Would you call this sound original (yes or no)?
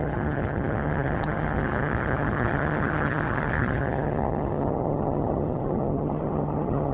no